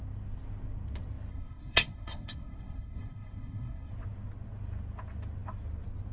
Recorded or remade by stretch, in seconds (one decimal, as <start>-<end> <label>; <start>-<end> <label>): 0.0-1.3 recorded; 1.3-3.9 remade; 3.9-6.1 recorded